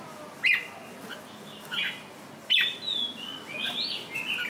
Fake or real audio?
real